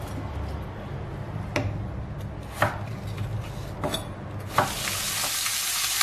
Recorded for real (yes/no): yes